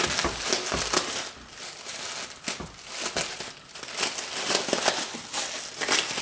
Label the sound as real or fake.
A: real